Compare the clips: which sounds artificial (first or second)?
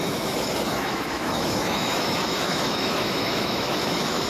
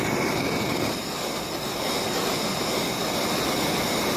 first